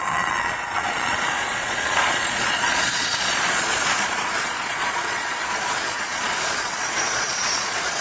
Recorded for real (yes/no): no